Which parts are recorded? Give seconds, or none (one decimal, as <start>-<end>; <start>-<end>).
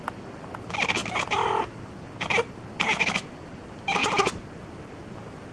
0.0-5.5